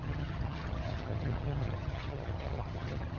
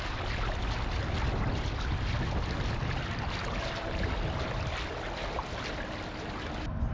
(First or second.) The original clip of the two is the second